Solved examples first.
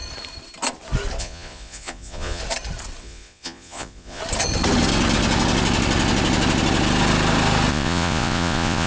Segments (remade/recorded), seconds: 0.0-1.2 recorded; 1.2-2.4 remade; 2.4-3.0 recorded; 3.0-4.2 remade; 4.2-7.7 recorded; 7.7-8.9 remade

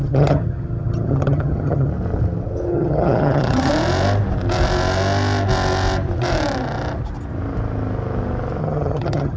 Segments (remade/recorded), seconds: 0.0-1.9 remade; 1.9-2.7 recorded; 2.7-3.7 remade; 3.7-8.6 recorded; 8.6-9.4 remade

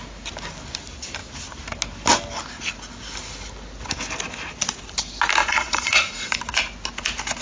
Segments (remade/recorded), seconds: 0.0-5.4 recorded; 5.4-6.3 remade; 6.3-7.4 recorded

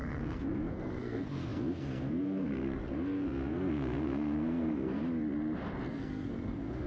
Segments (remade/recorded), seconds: 0.0-5.0 remade; 5.0-5.9 recorded; 5.9-6.9 remade

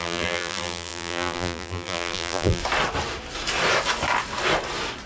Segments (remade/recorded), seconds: 0.0-2.6 remade; 2.6-5.1 recorded

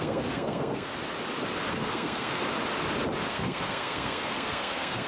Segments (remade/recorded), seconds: 0.0-0.9 remade; 0.9-1.7 recorded; 1.7-2.4 remade; 2.4-3.3 recorded; 3.3-5.1 remade

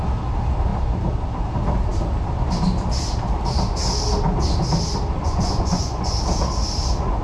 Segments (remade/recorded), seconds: 0.0-5.2 recorded; 5.2-6.1 remade; 6.1-7.2 recorded

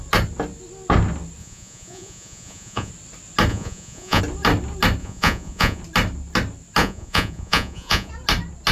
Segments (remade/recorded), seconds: 0.0-1.4 recorded; 1.4-2.9 remade; 2.9-3.5 recorded; 3.5-4.2 remade; 4.2-5.0 recorded; 5.0-5.8 remade; 5.8-6.8 recorded; 6.8-8.1 remade; 8.1-8.7 recorded